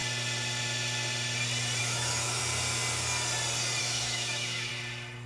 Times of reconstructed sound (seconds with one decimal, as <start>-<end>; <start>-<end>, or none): 1.8-2.4; 3.8-4.7